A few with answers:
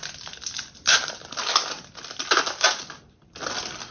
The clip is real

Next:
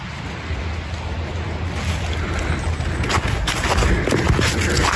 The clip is real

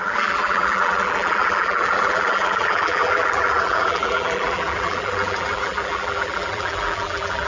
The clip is fake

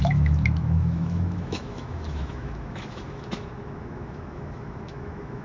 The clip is fake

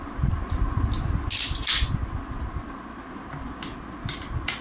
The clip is real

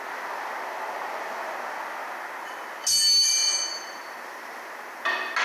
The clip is real